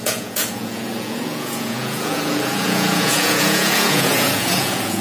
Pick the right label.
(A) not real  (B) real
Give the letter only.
A